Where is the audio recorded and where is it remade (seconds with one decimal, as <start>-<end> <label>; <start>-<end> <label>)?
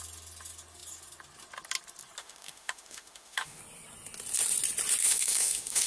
0.0-2.2 recorded; 2.2-3.6 remade; 3.6-5.0 recorded; 5.0-5.9 remade